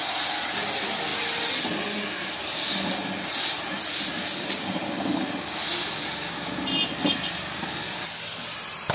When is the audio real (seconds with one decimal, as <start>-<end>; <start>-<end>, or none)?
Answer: 0.0-8.9